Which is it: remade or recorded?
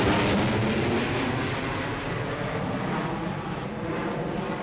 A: recorded